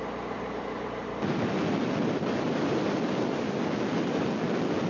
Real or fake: real